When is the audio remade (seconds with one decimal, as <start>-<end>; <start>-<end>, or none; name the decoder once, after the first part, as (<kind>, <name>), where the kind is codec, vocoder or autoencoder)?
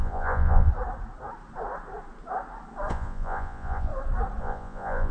0.0-0.7 (vocoder, Vocos); 2.9-3.9; 4.4-5.1